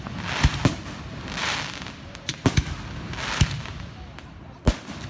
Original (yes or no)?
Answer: yes